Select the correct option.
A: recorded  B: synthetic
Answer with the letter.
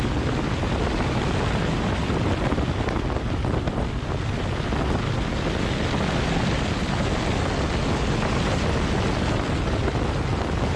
A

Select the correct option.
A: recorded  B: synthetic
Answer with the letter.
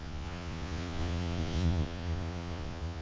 B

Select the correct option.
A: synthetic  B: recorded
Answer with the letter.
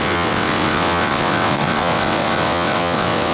A